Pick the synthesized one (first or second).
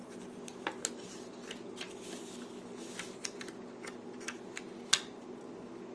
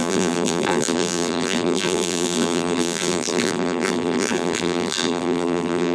second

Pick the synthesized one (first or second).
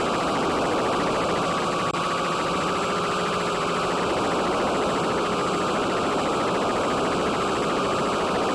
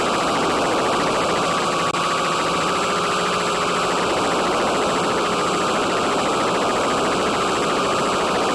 first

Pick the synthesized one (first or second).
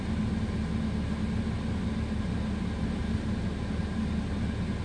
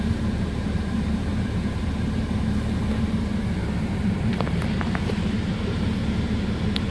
second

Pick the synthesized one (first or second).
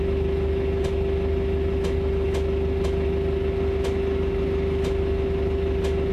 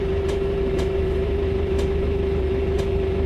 second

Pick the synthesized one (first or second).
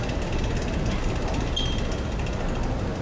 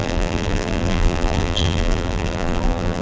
second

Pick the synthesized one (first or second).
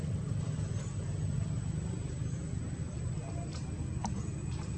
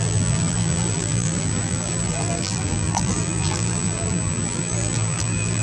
second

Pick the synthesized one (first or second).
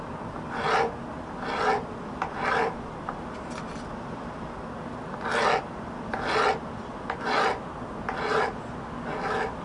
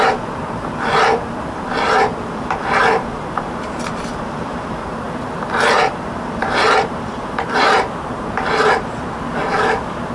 second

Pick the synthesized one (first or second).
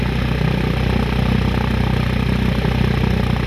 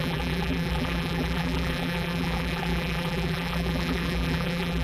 second